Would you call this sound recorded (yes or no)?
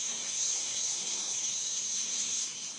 no